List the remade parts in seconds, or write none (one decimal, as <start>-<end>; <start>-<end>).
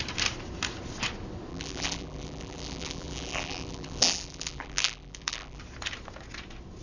1.5-5.6